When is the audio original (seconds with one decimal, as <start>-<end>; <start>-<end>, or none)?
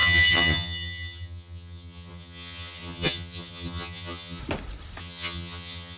4.4-5.0